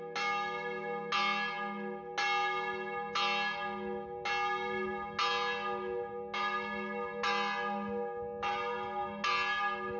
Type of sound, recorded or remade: recorded